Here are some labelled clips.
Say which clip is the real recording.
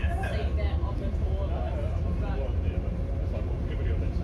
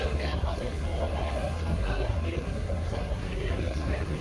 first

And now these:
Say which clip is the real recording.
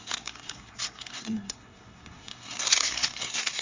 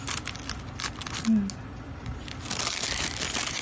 second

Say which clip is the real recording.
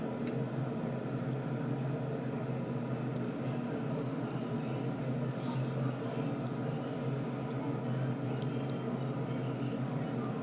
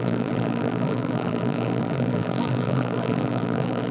first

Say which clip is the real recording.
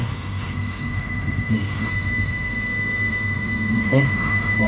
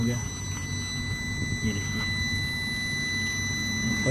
second